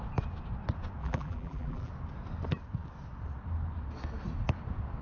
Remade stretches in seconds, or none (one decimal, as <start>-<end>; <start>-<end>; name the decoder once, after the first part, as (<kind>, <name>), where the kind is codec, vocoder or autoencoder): 1.0-1.9 (vocoder, BigVGAN v2)